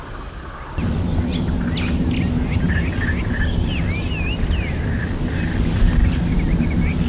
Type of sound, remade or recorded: recorded